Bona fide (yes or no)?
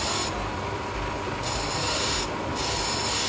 yes